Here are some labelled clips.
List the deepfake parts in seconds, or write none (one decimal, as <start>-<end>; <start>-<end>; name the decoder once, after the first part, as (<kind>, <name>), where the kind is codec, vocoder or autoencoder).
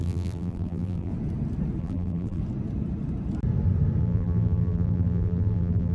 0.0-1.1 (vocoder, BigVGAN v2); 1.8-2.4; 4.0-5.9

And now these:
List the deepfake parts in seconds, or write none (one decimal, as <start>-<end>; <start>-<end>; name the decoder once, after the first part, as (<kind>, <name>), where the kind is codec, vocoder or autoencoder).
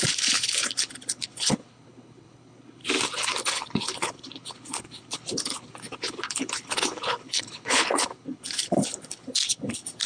0.0-2.8 (codec, HILCodec); 3.4-10.1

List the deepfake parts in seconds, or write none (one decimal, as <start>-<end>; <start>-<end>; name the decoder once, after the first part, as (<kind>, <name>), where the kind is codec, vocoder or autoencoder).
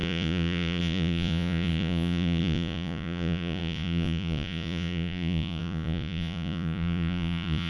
0.0-7.7 (vocoder, Vocos)